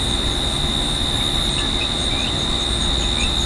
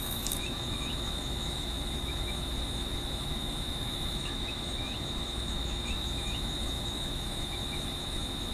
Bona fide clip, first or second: first